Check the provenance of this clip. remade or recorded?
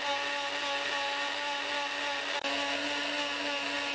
recorded